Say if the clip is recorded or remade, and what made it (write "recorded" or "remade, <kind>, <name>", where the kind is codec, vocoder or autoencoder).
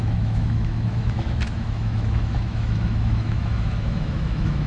remade, autoencoder, DAC-VAE